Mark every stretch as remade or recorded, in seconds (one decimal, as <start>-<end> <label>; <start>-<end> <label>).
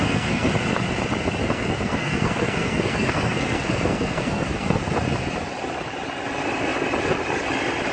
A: 0.0-0.5 remade; 0.5-1.4 recorded; 1.4-4.8 remade; 4.8-7.9 recorded